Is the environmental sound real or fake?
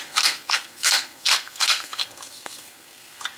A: fake